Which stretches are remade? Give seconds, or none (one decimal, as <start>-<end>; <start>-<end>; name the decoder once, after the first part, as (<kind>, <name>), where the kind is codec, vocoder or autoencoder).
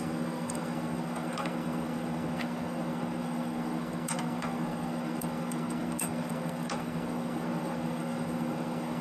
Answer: 0.0-9.0 (codec, SNAC)